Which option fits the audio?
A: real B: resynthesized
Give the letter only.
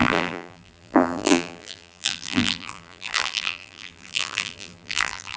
B